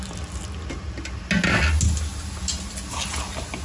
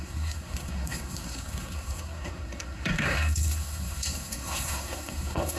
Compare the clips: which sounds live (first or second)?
first